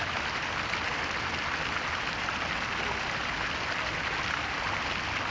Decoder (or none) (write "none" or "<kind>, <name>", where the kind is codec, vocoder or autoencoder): none